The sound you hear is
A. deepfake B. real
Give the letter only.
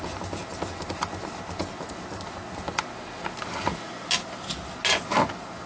B